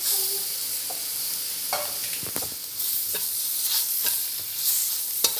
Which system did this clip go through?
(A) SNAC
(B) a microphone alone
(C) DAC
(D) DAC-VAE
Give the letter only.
B